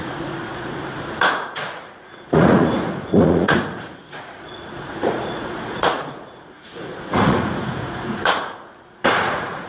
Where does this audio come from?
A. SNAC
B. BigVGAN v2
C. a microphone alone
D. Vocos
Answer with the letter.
D